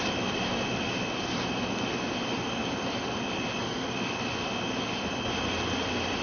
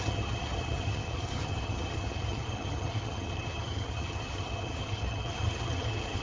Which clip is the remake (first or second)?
second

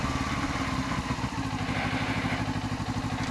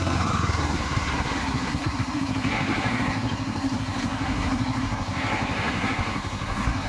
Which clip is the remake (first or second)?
second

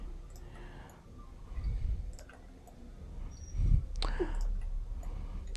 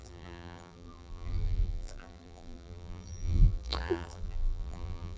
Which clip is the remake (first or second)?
second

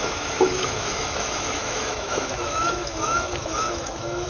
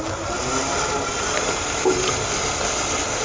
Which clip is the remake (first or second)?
first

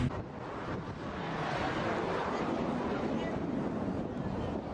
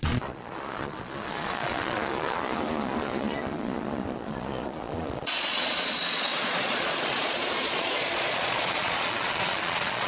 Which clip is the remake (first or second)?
second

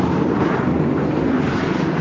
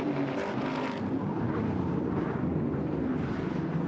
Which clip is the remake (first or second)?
first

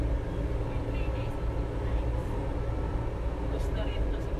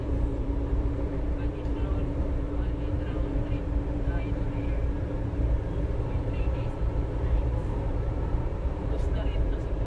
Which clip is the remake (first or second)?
second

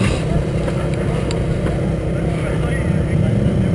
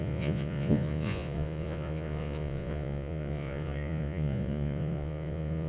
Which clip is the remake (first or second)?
second